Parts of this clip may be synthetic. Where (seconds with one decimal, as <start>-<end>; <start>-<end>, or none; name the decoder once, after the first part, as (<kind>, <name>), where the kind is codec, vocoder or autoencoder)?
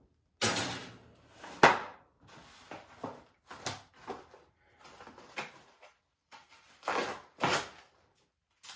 none